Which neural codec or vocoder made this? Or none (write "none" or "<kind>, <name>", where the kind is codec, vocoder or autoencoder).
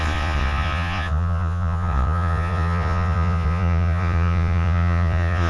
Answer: vocoder, Vocos